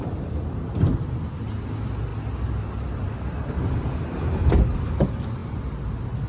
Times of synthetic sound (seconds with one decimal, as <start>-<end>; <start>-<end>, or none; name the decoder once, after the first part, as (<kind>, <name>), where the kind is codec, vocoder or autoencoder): none